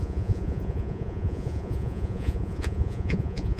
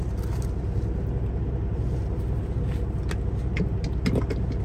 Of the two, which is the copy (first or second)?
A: first